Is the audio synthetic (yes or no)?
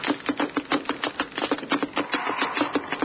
no